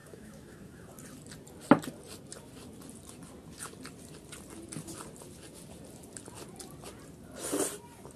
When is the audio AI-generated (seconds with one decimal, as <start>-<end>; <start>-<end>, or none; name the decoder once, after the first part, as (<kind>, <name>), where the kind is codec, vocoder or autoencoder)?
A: 0.0-0.9 (autoencoder, DAC-VAE)